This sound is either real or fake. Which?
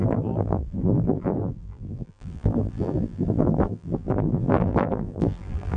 fake